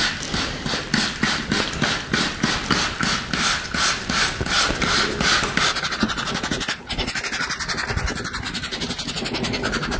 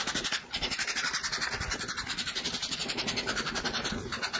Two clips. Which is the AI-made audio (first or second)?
second